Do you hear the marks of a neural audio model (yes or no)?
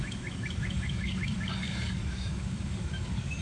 yes